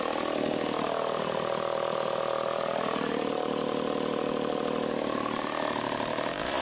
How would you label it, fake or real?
real